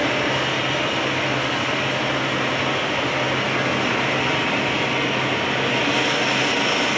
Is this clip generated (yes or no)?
no